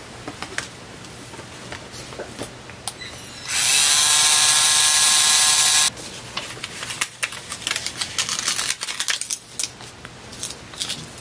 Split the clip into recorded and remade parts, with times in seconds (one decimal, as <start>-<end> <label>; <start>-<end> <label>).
0.0-11.2 recorded